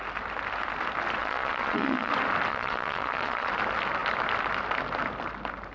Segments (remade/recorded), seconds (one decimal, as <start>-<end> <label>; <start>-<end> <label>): 0.0-1.2 recorded; 1.2-2.1 remade; 2.1-2.5 recorded; 2.5-3.5 remade; 3.5-5.7 recorded